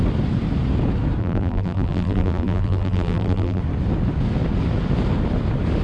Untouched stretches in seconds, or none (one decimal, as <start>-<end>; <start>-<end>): 0.0-1.2; 3.6-5.8